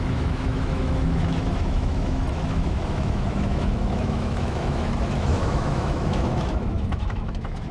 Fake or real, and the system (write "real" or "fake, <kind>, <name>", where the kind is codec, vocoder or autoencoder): fake, autoencoder, DAC-VAE